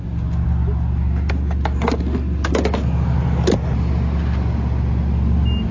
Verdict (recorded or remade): recorded